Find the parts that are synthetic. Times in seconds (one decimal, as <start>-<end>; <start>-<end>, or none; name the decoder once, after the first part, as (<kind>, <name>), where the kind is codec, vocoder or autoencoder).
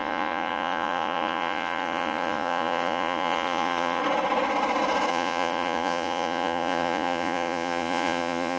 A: 0.0-4.0 (vocoder, Vocos); 5.1-8.6